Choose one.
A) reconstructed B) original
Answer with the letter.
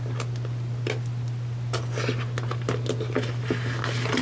B